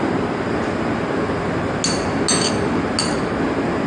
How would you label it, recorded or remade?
recorded